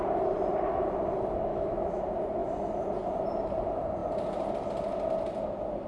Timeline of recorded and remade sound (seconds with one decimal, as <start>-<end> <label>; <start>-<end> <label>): 0.0-1.5 recorded; 1.5-2.0 remade; 2.0-5.9 recorded